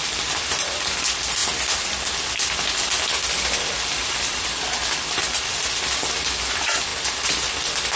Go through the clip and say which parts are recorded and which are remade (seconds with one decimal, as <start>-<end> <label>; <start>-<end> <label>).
0.0-8.0 recorded